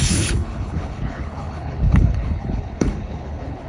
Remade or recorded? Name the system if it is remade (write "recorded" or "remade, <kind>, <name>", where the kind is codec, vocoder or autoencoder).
remade, codec, HILCodec